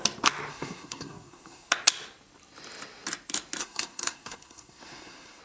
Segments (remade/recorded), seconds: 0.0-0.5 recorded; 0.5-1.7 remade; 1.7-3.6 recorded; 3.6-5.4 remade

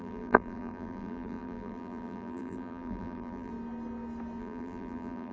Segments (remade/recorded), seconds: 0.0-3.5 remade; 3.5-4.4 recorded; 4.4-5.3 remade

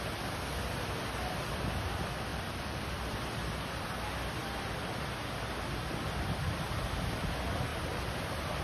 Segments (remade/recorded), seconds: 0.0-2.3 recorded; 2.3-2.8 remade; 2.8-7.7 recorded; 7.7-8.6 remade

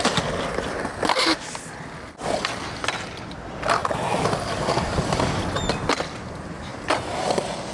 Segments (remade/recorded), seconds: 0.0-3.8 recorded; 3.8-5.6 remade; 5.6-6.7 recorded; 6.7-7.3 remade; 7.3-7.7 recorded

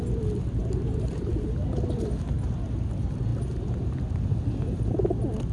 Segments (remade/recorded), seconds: 0.0-0.6 recorded; 0.6-1.3 remade; 1.3-5.5 recorded

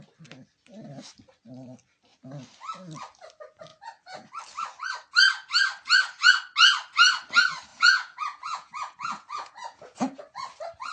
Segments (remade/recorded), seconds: 0.0-3.7 recorded; 3.7-4.4 remade; 4.4-7.7 recorded; 7.7-10.2 remade; 10.2-10.9 recorded

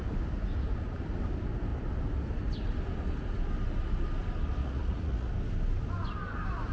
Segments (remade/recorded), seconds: 0.0-4.6 recorded; 4.6-5.3 remade; 5.3-6.7 recorded